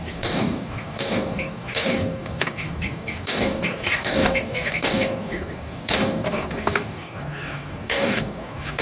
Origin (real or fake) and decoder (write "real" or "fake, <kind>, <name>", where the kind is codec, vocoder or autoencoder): fake, codec, DAC